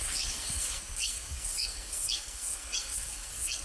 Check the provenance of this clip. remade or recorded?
remade